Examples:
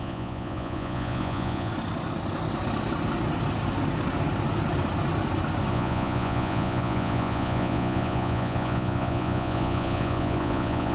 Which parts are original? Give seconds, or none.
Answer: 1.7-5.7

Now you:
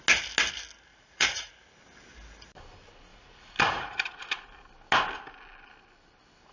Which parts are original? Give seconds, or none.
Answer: 0.0-0.9; 1.5-3.1; 4.2-6.5

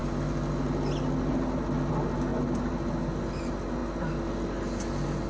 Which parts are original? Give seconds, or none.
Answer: 0.0-5.3